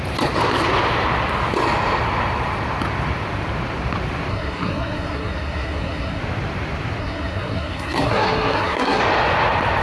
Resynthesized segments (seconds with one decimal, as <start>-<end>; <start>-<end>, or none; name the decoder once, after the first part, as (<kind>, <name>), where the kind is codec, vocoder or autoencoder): 4.3-6.2 (codec, SNAC); 7.0-9.0